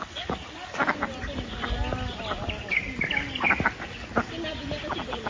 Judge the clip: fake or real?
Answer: real